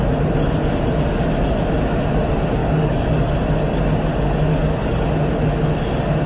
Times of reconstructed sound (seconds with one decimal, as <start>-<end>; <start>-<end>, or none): 2.6-3.3; 4.5-5.0

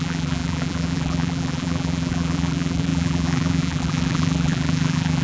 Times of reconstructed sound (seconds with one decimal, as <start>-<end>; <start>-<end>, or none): 0.0-5.2

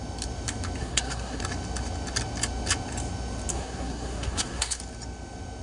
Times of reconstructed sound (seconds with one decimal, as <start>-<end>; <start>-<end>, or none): 0.8-1.4; 3.5-4.8

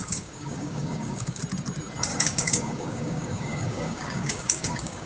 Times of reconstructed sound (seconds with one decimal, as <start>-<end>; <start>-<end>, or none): 0.0-1.4; 2.1-5.1

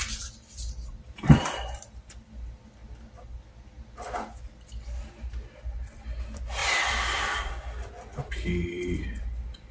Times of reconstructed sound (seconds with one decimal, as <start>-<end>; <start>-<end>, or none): 0.0-0.7; 6.6-7.5

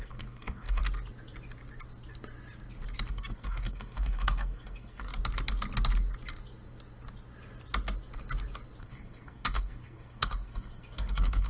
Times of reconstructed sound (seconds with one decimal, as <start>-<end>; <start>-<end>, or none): 0.0-0.8; 3.1-5.1; 8.8-11.5

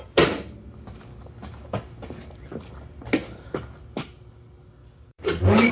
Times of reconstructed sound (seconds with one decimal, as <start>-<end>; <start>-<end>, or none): 1.1-2.3; 4.8-5.7